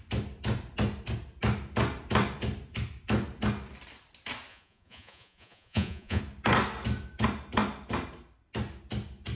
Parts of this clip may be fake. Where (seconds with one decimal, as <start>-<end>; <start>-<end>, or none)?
4.5-6.2